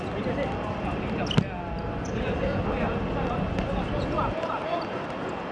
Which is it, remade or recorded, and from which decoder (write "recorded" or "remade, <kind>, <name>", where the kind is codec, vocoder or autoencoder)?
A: recorded